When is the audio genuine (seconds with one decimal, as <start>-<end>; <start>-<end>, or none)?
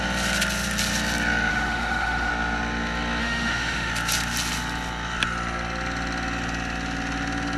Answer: 0.0-1.5; 2.3-3.2; 3.9-7.6